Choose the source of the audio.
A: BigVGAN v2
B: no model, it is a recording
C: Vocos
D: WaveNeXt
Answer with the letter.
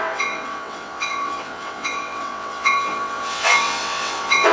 D